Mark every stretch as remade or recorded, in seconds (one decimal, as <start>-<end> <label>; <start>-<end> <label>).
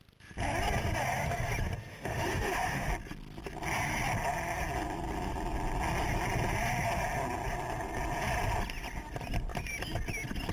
0.0-1.9 recorded; 1.9-2.9 remade; 2.9-10.5 recorded